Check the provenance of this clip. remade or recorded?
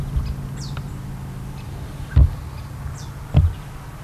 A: recorded